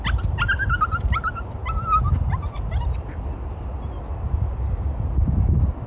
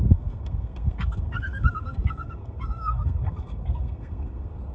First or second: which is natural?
first